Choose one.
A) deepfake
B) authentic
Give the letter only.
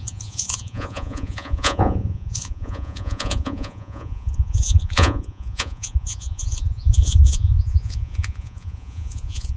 A